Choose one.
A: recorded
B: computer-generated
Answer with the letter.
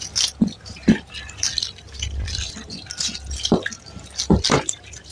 A